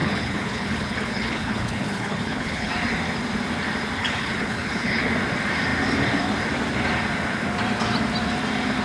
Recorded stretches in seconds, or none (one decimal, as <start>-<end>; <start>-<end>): 2.7-4.0; 5.1-8.8